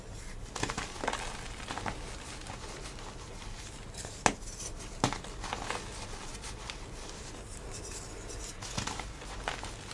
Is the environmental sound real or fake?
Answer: real